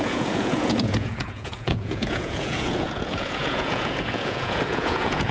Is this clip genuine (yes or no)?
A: no